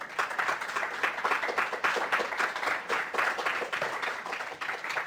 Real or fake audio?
real